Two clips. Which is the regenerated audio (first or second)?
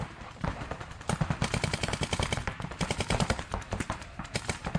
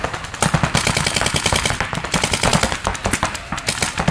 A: first